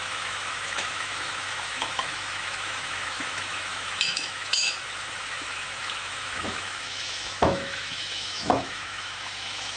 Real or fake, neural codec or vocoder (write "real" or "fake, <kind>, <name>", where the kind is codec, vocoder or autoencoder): fake, autoencoder, DAC-VAE